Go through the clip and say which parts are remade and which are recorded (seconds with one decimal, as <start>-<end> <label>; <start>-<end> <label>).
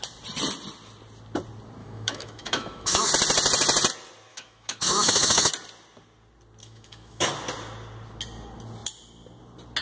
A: 0.0-1.8 recorded; 1.8-3.1 remade; 3.1-4.3 recorded; 4.3-5.5 remade; 5.5-6.6 recorded; 6.6-7.3 remade; 7.3-9.8 recorded